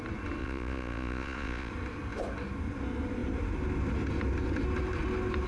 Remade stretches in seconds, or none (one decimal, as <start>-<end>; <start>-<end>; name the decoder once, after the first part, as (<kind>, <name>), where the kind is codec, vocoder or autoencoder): 0.4-1.7 (vocoder, Vocos)